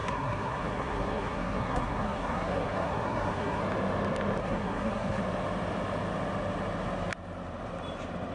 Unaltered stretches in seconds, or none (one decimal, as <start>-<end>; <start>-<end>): 3.6-4.4; 5.2-8.3